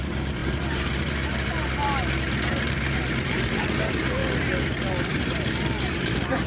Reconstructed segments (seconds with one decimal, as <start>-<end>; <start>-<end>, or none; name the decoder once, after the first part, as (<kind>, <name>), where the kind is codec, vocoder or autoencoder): 0.0-4.2 (vocoder, BigVGAN v2); 5.0-6.5